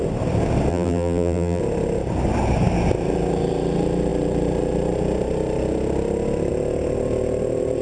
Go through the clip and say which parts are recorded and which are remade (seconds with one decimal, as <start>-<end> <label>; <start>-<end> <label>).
0.0-0.7 recorded; 0.7-1.6 remade; 1.6-7.8 recorded